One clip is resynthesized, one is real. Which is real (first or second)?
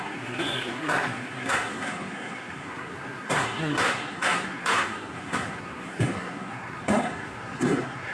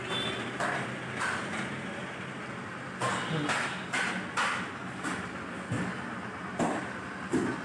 second